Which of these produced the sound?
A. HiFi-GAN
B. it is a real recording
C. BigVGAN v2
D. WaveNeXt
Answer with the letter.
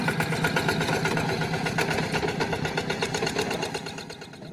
B